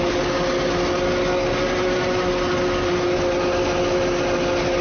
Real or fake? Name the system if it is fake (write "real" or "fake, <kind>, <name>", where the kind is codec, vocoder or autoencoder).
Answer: real